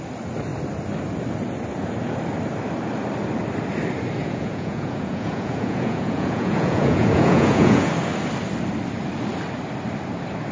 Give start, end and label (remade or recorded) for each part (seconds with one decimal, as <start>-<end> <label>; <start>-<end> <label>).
0.0-4.2 recorded; 4.2-7.9 remade; 7.9-10.5 recorded